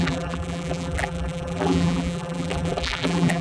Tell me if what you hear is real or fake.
fake